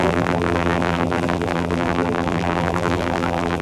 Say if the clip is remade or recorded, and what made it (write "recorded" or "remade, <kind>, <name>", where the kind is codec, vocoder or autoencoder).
remade, vocoder, BigVGAN v2